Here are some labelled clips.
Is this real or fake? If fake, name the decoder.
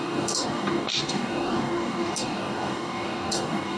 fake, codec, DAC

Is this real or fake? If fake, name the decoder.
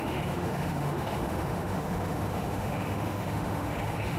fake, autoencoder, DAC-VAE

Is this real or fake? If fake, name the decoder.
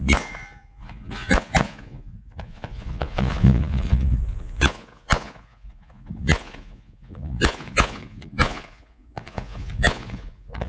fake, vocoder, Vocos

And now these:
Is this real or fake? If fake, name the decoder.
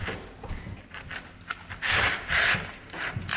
real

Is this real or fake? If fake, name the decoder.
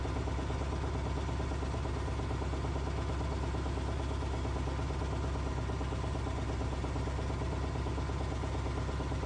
real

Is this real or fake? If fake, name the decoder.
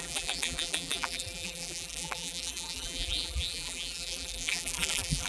fake, vocoder, BigVGAN v2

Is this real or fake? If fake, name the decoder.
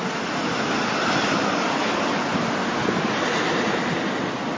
real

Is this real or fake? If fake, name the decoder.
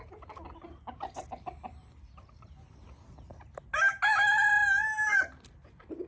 real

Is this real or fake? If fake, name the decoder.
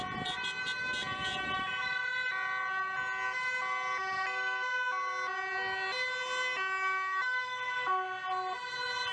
real